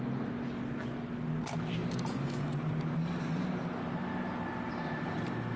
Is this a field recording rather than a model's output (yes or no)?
yes